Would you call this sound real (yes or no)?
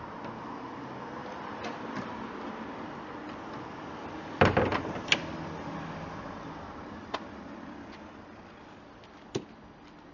yes